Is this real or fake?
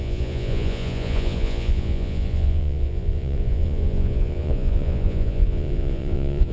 fake